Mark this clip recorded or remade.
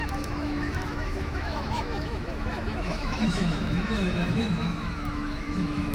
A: remade